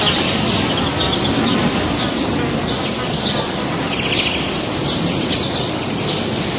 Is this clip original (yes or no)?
yes